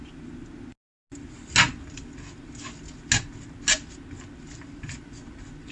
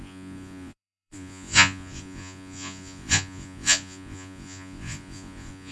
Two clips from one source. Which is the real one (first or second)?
first